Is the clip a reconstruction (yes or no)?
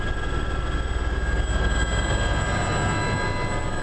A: no